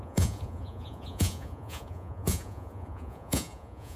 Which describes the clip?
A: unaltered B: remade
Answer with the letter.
B